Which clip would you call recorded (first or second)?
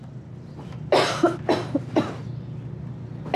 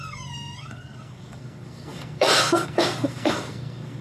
first